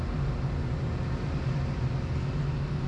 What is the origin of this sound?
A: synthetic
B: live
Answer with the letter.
B